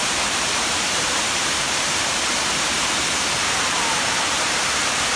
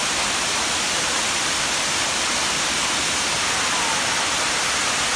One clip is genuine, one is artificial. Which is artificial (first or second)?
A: first